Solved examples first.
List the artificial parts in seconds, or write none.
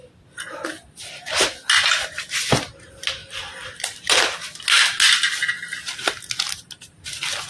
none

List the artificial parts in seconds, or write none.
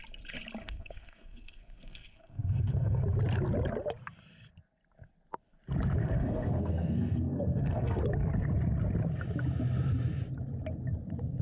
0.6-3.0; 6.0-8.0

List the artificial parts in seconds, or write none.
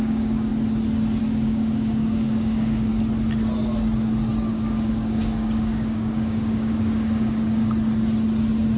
0.0-0.5; 1.2-2.9; 4.5-7.6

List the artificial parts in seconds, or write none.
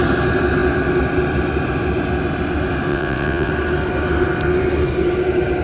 2.9-3.5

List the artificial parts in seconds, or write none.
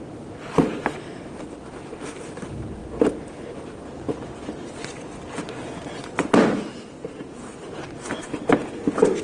none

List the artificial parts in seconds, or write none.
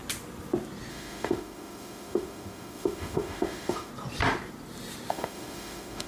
0.9-3.9; 5.1-6.1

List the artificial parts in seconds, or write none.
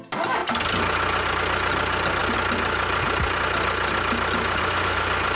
none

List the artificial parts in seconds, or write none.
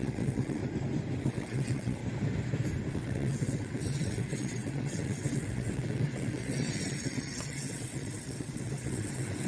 0.0-0.6; 1.2-2.0; 2.9-9.5